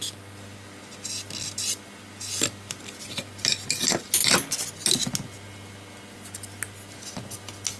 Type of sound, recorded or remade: recorded